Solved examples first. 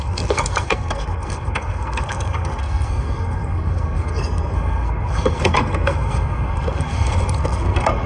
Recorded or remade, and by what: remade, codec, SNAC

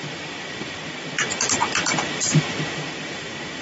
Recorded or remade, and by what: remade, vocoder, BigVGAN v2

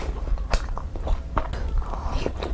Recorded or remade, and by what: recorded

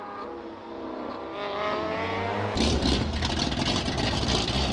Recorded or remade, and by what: recorded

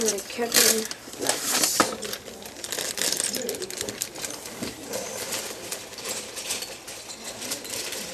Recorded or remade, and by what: remade, vocoder, BigVGAN v2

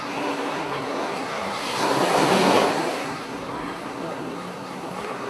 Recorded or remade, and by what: remade, codec, SNAC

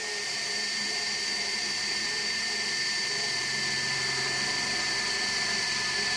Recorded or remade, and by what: remade, vocoder, BigVGAN v2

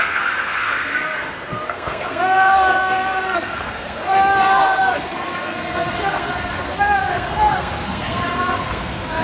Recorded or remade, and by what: remade, codec, SNAC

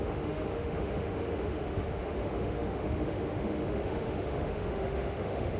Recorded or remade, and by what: remade, autoencoder, DAC-VAE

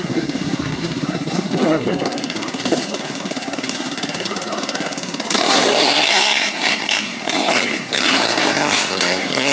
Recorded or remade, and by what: remade, codec, SNAC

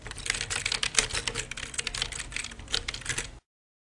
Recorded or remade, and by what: recorded